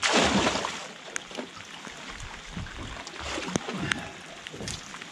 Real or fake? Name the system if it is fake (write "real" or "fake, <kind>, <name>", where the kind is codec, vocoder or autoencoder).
real